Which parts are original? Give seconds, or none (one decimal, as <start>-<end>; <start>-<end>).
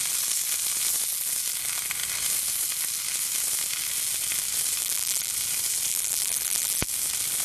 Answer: 0.0-4.8; 5.3-5.9; 6.9-7.4